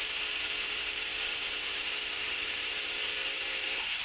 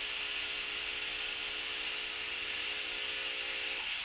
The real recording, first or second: second